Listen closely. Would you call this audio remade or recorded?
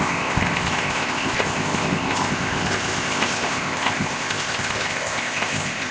remade